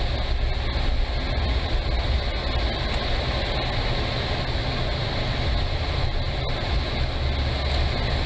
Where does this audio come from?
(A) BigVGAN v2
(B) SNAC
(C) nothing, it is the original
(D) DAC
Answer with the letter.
C